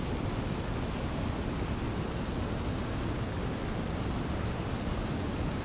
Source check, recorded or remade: recorded